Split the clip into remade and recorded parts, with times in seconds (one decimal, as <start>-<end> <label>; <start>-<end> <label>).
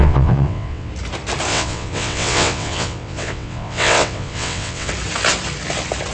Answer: 0.0-0.9 remade; 0.9-1.5 recorded; 1.5-4.9 remade; 4.9-6.1 recorded